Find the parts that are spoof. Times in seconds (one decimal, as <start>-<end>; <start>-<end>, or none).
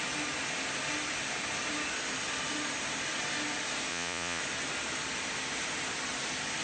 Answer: 3.9-4.4